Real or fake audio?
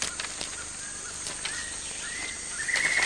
real